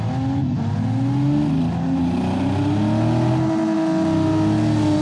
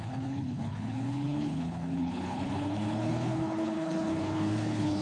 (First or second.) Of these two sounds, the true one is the first